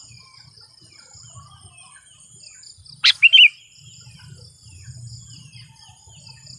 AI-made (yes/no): no